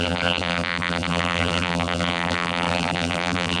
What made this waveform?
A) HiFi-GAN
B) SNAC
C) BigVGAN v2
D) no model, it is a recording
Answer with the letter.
C